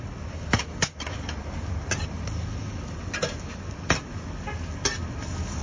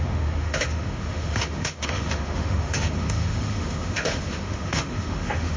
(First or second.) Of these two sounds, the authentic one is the first